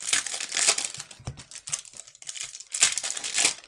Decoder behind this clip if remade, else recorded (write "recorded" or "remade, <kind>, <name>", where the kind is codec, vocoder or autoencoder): recorded